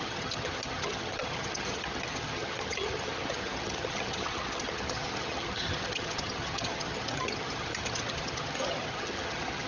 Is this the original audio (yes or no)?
no